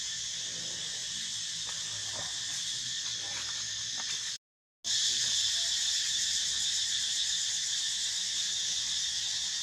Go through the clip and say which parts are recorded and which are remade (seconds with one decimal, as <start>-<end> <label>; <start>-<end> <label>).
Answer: 0.0-5.0 recorded; 5.0-7.3 remade; 7.3-9.6 recorded